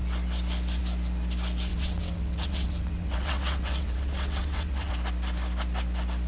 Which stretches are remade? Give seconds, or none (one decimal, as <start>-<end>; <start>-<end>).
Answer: 1.7-4.9